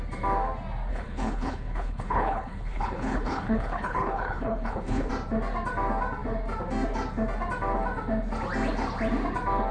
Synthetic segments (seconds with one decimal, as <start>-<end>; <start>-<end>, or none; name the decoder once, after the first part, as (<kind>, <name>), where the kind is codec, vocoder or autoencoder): 0.9-5.1 (codec, HILCodec)